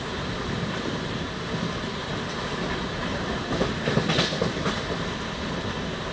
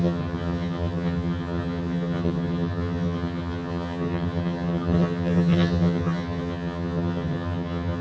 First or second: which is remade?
second